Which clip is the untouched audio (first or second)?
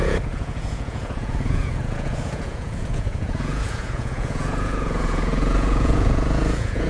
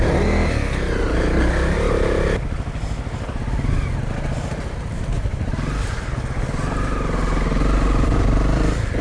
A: second